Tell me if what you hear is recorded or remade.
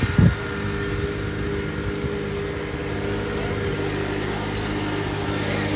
recorded